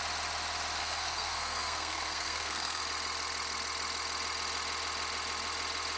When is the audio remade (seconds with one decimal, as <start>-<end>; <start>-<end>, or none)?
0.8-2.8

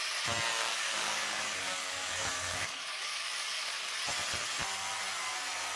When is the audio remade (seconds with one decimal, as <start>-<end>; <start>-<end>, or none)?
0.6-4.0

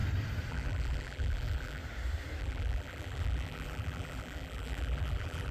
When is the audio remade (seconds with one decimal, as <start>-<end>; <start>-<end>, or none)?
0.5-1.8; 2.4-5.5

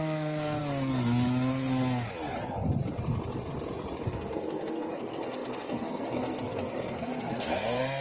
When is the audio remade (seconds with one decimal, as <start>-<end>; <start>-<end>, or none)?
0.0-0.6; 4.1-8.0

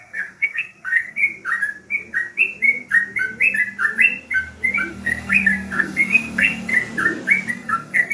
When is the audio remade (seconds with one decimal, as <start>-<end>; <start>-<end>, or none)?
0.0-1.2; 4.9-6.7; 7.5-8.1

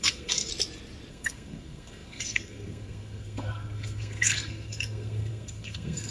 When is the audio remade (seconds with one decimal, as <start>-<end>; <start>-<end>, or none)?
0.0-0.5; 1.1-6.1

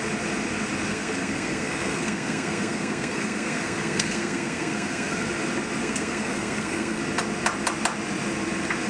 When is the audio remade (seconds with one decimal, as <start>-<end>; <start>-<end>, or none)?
0.9-5.3; 5.8-7.0